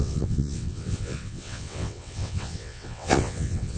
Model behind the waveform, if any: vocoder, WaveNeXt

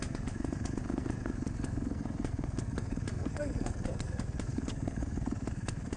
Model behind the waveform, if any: codec, SNAC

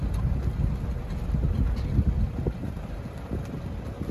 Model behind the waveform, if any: none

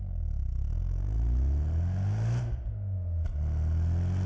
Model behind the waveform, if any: none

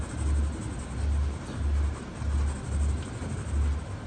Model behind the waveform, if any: none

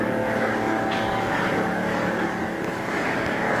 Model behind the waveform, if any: codec, DAC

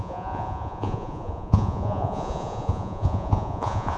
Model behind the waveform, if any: vocoder, Vocos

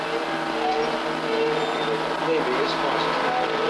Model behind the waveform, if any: none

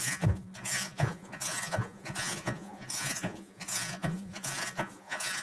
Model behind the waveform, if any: vocoder, Vocos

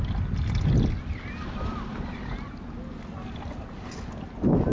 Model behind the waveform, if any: none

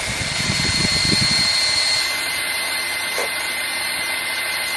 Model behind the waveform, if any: vocoder, BigVGAN v2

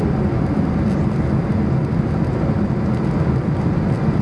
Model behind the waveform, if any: none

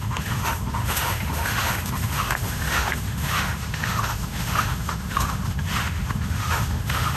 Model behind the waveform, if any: autoencoder, DAC-VAE